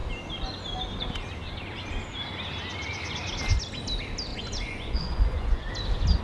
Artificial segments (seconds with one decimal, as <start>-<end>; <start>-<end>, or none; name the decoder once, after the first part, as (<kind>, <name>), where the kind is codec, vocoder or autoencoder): 4.3-5.7 (vocoder, Vocos)